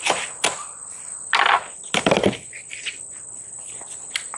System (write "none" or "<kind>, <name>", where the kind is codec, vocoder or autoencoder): none